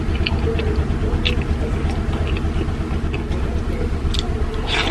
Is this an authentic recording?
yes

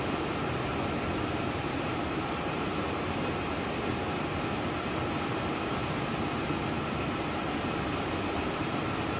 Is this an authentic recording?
no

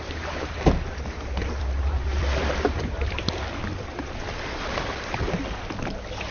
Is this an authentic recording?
no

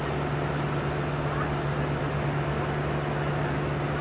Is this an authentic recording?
yes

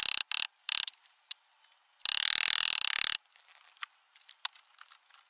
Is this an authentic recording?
yes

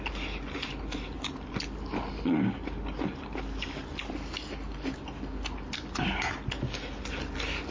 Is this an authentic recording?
yes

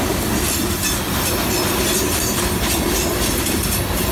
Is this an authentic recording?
yes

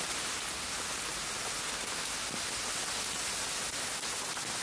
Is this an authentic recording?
yes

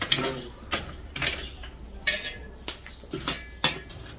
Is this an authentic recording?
yes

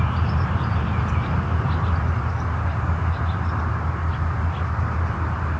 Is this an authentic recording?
yes